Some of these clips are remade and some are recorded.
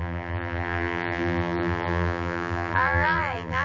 remade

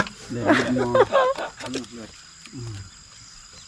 recorded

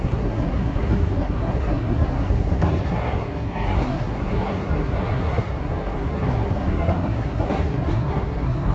remade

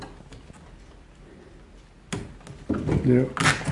recorded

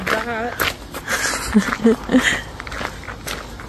recorded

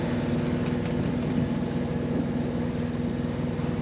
recorded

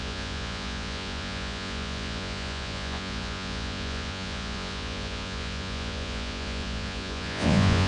remade